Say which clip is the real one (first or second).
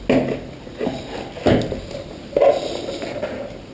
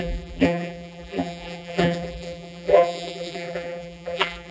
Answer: first